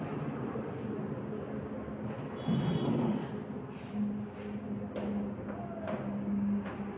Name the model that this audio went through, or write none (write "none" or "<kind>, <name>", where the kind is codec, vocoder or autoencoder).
none